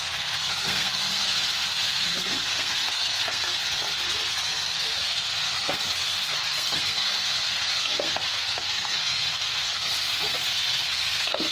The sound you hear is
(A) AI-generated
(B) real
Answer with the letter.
A